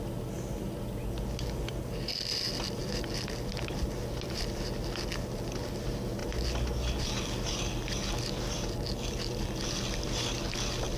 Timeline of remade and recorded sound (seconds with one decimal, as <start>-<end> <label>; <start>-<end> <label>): 0.0-11.0 recorded

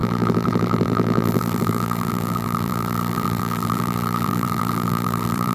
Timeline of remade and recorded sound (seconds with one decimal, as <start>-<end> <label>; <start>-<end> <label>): 0.0-5.5 remade